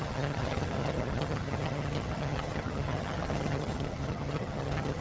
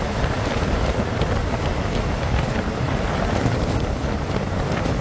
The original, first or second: second